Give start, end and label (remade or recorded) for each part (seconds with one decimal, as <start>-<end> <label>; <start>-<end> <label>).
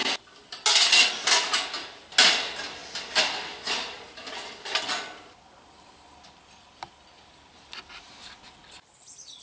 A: 0.0-9.4 recorded